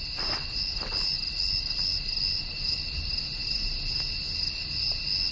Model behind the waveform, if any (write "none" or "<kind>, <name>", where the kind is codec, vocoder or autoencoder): none